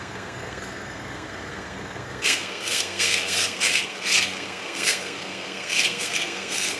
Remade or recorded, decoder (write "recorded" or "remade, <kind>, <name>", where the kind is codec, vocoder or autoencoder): remade, codec, SNAC